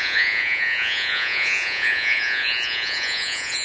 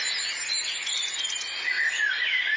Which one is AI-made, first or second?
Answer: first